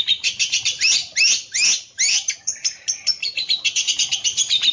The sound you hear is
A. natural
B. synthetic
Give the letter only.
A